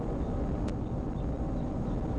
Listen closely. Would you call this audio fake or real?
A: real